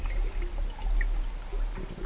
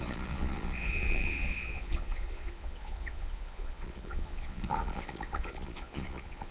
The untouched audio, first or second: first